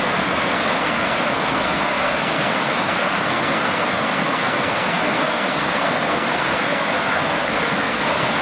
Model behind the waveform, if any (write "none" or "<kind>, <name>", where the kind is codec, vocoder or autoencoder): codec, SNAC